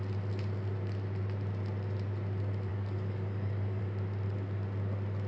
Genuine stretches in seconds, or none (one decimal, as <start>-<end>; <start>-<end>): 0.0-2.7; 3.8-5.3